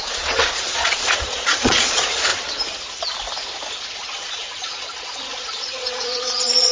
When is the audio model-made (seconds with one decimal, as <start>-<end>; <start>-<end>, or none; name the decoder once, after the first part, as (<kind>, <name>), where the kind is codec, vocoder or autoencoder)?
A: 0.0-2.3 (vocoder, Vocos); 3.7-6.7